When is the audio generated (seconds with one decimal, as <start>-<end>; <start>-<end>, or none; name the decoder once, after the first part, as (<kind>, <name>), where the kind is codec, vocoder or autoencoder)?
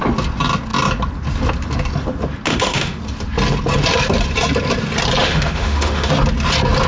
2.5-3.0 (autoencoder, DAC-VAE); 5.2-6.1